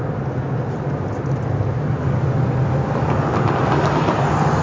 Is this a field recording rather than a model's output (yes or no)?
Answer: yes